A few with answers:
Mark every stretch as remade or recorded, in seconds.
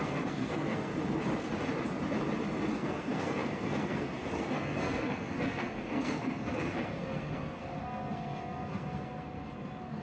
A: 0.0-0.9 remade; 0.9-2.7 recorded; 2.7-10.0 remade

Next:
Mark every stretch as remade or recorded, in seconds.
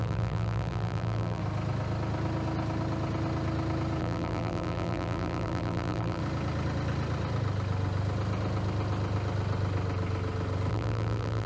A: 0.0-1.4 remade; 1.4-4.0 recorded; 4.0-6.2 remade; 6.2-10.7 recorded; 10.7-11.5 remade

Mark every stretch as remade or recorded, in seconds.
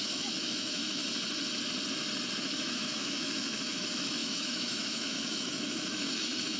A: 0.0-1.0 remade; 1.0-2.4 recorded; 2.4-6.6 remade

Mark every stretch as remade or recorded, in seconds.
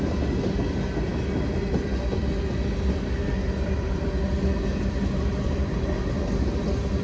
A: 0.0-7.0 recorded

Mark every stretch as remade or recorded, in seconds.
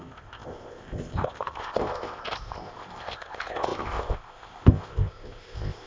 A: 0.0-5.9 remade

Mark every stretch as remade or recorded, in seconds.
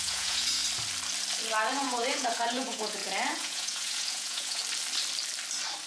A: 0.0-0.6 remade; 0.6-1.7 recorded; 1.7-4.6 remade; 4.6-5.9 recorded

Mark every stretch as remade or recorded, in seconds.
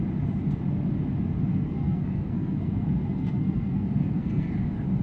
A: 0.0-1.5 recorded; 1.5-4.5 remade; 4.5-5.0 recorded